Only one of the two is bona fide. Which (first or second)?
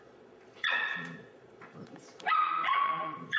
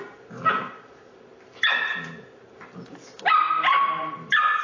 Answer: second